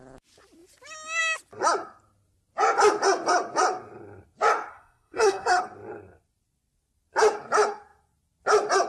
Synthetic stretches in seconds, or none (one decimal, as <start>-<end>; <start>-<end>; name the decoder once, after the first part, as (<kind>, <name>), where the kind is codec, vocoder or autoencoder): 4.7-5.6 (codec, SNAC)